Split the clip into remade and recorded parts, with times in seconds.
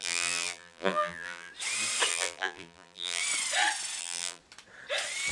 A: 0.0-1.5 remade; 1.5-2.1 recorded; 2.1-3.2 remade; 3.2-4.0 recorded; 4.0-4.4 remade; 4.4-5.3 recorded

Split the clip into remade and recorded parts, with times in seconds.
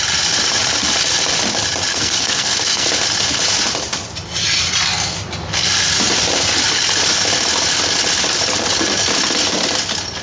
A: 0.0-1.9 recorded; 1.9-2.9 remade; 2.9-10.2 recorded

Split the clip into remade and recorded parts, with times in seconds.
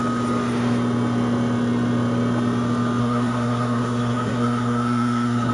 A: 0.0-3.0 recorded; 3.0-5.5 remade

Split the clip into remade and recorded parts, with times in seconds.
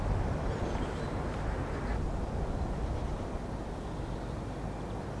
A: 0.0-1.9 remade; 1.9-5.2 recorded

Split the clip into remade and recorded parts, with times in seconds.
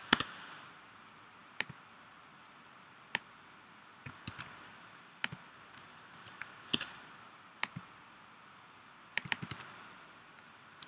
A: 0.0-10.9 recorded